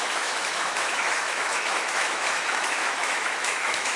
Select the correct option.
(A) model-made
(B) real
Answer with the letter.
A